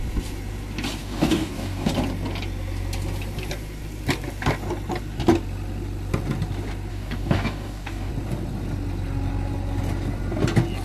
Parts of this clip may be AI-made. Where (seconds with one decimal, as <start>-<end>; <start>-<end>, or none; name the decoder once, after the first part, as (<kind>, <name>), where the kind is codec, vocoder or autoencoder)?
1.0-1.9 (codec, DAC); 6.9-8.1